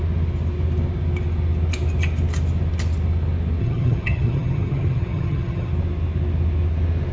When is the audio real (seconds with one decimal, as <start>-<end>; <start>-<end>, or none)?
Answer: 0.0-3.6; 5.7-7.1